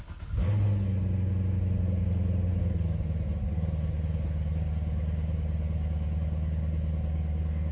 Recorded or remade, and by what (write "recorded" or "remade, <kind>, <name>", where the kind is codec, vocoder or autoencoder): recorded